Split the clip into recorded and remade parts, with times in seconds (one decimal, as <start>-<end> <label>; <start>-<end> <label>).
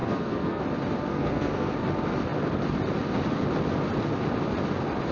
0.0-0.6 remade; 0.6-1.1 recorded; 1.1-1.7 remade; 1.7-5.1 recorded